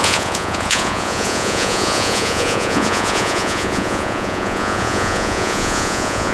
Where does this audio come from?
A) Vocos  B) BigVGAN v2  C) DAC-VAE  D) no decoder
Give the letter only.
A